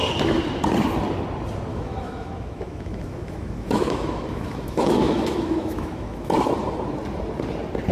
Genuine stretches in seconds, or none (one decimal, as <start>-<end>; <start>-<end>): 0.0-1.7; 6.3-7.9